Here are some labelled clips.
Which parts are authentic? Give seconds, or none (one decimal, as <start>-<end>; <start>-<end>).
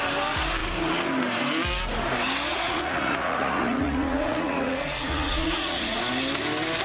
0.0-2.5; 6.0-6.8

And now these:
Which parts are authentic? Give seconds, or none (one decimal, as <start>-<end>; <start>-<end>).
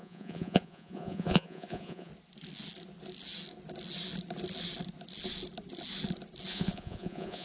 2.1-6.5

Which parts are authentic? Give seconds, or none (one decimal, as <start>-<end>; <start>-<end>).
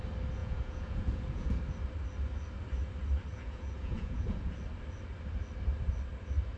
0.0-0.4; 1.6-3.3; 4.5-6.6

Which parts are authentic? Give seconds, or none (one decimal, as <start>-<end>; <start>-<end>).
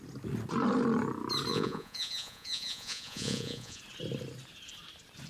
0.0-1.5; 3.8-5.3